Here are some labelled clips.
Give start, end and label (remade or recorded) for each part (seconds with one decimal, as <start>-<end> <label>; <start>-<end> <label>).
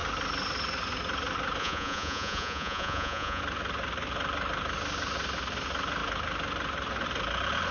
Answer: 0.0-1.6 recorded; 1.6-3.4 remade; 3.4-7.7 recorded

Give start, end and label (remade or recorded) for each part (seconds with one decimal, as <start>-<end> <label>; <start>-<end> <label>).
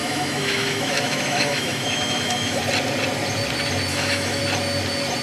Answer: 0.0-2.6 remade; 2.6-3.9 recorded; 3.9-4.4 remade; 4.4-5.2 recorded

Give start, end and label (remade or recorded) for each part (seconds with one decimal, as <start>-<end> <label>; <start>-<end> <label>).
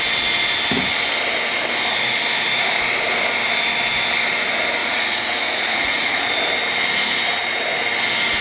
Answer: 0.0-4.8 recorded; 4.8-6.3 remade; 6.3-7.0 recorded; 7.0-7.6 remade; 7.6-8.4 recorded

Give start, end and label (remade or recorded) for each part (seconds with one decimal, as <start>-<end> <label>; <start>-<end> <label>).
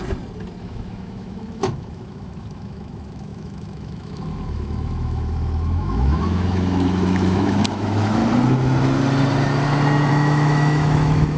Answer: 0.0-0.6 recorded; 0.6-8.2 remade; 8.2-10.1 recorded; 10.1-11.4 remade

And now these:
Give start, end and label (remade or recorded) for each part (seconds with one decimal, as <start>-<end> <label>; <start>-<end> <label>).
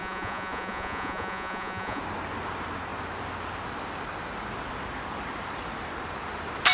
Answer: 0.0-2.0 remade; 2.0-6.7 recorded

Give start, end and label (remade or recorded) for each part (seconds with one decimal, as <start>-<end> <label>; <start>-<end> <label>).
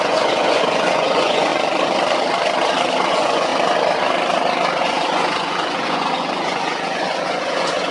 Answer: 0.0-1.5 remade; 1.5-3.1 recorded; 3.1-3.5 remade; 3.5-4.8 recorded; 4.8-7.9 remade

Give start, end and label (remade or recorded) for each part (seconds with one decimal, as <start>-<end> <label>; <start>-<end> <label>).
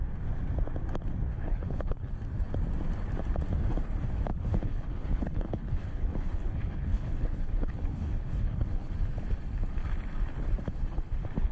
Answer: 0.0-1.3 recorded; 1.3-2.1 remade; 2.1-4.3 recorded; 4.3-8.9 remade; 8.9-11.5 recorded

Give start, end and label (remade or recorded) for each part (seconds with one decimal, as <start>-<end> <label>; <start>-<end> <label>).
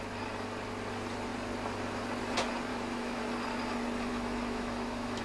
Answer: 0.0-2.7 recorded; 2.7-3.2 remade; 3.2-4.1 recorded; 4.1-5.2 remade